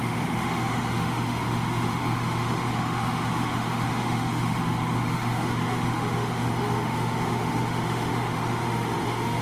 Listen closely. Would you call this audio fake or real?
fake